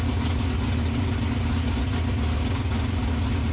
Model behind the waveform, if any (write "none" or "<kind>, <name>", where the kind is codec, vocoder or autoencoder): none